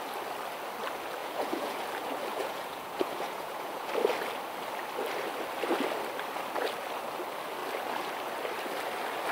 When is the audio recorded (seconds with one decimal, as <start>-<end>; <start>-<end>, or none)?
0.0-1.2; 1.8-2.3; 3.9-9.3